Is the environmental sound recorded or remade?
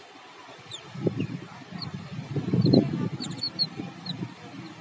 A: recorded